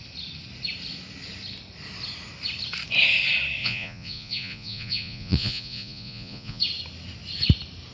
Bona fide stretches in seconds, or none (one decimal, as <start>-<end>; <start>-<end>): 0.0-3.6; 6.6-7.9